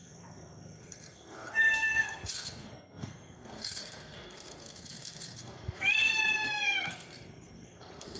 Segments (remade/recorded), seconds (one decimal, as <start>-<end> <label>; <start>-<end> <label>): 0.0-8.2 remade

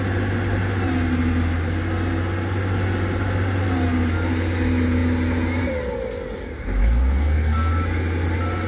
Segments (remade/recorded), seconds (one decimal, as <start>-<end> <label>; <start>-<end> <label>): 0.0-6.8 recorded; 6.8-7.7 remade; 7.7-8.7 recorded

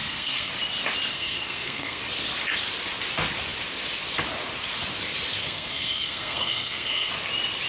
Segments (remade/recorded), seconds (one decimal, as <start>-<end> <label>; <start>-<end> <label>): 0.0-0.5 remade; 0.5-1.1 recorded; 1.1-2.0 remade; 2.0-5.4 recorded; 5.4-7.1 remade; 7.1-7.7 recorded

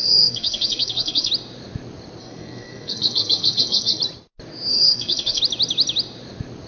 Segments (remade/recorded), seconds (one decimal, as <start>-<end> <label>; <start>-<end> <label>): 0.0-1.3 remade; 1.3-2.2 recorded; 2.2-4.0 remade; 4.0-4.7 recorded; 4.7-5.4 remade; 5.4-6.7 recorded

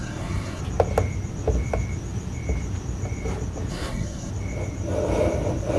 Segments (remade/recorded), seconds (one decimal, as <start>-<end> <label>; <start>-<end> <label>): 0.0-0.6 remade; 0.6-3.7 recorded; 3.7-4.3 remade; 4.3-5.8 recorded

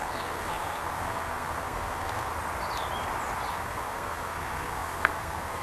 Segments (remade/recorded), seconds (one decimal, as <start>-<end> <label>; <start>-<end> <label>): 0.0-2.3 remade; 2.3-3.5 recorded; 3.5-5.6 remade